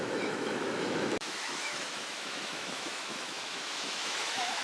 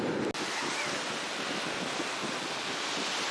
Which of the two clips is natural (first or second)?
second